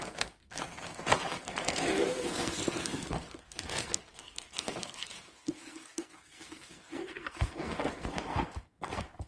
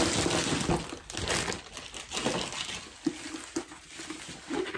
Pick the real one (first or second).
second